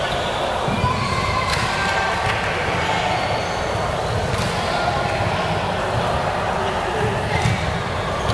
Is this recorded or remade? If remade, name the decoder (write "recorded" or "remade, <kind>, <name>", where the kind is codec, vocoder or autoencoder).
recorded